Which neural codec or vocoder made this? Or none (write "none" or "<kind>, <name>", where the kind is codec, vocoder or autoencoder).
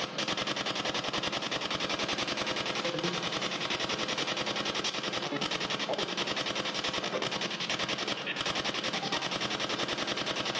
none